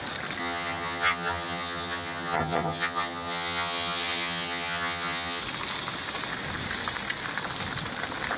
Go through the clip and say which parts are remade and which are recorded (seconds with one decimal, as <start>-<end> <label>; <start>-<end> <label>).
0.0-0.4 recorded; 0.4-5.4 remade; 5.4-8.4 recorded